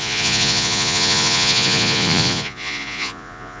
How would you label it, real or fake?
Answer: fake